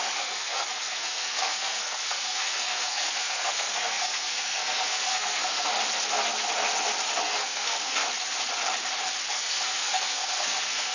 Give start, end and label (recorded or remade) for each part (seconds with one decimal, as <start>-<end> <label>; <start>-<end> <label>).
0.0-5.7 remade; 5.7-7.2 recorded; 7.2-8.0 remade; 8.0-9.3 recorded; 9.3-10.9 remade